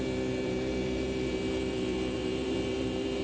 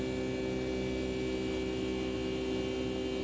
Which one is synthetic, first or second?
first